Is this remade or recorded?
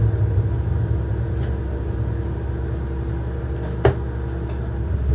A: recorded